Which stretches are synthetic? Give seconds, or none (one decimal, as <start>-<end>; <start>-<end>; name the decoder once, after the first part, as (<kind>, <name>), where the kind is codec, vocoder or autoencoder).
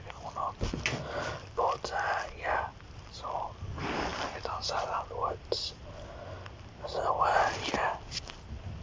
none